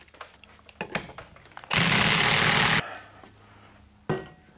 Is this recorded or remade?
recorded